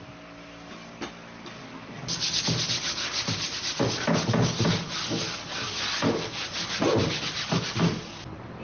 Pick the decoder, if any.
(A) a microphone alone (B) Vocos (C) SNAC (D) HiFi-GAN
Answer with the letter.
A